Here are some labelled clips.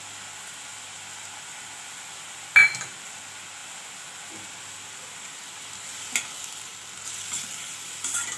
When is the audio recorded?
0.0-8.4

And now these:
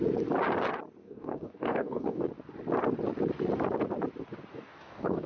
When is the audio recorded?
0.0-1.0; 2.3-4.5

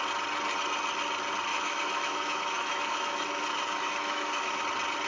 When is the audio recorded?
0.0-1.5; 4.6-5.1

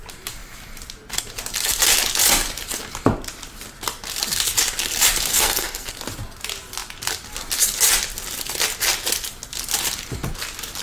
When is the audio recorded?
0.0-5.3; 5.9-10.8

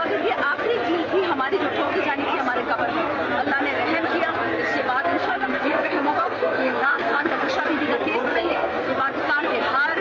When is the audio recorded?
0.0-5.2; 7.5-8.3; 8.9-10.0